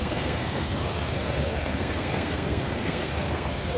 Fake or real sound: fake